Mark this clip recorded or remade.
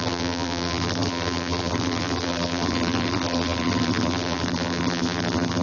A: remade